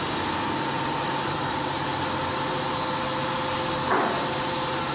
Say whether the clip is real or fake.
real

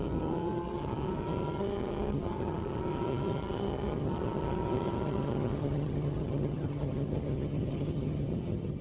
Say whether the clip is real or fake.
fake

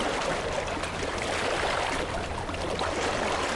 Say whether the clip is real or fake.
real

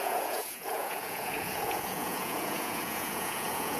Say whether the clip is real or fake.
fake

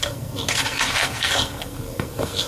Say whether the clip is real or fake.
fake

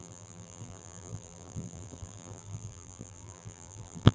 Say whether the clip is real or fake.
fake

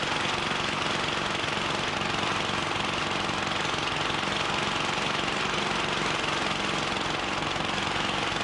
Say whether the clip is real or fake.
real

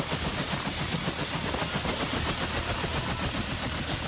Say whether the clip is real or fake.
real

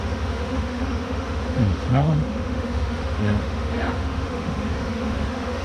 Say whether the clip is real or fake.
fake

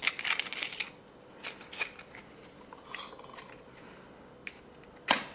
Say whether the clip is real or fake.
real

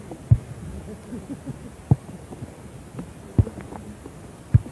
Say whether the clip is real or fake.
real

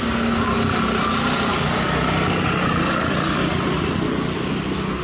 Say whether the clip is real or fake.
real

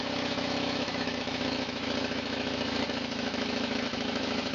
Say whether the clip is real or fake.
fake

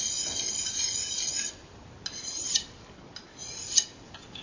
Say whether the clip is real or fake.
real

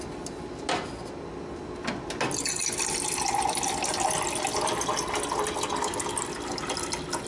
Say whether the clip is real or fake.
real